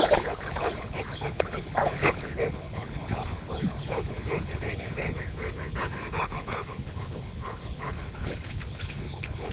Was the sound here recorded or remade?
remade